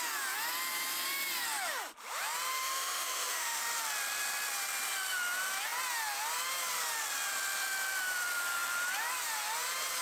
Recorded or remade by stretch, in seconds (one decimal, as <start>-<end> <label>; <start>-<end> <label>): 0.0-2.5 recorded; 2.5-3.6 remade; 3.6-10.0 recorded